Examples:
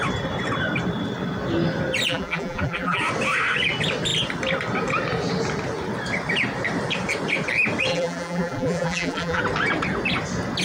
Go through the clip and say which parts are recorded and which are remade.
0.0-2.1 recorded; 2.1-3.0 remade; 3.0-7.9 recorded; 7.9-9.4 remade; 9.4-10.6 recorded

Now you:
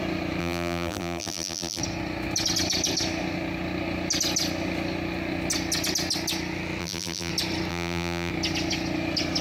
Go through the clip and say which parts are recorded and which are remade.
0.0-0.4 recorded; 0.4-1.8 remade; 1.8-6.8 recorded; 6.8-7.3 remade; 7.3-7.7 recorded; 7.7-8.3 remade; 8.3-9.4 recorded

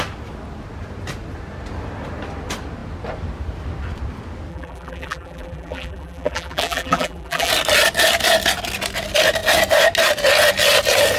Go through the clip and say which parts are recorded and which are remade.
0.0-4.5 recorded; 4.5-7.5 remade; 7.5-11.2 recorded

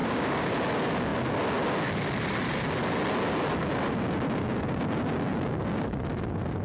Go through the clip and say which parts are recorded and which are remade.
0.0-0.5 remade; 0.5-6.6 recorded

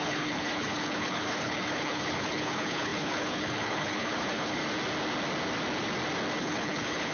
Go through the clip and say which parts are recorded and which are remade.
0.0-4.6 remade; 4.6-6.4 recorded; 6.4-7.1 remade

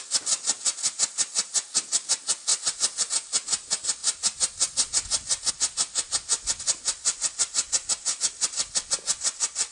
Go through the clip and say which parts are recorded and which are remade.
0.0-2.5 recorded; 2.5-3.1 remade; 3.1-9.7 recorded